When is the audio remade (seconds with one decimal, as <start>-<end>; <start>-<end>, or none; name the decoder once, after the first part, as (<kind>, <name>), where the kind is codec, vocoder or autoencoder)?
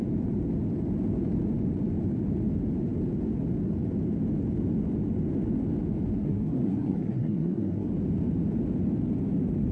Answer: 6.2-7.9 (codec, SNAC)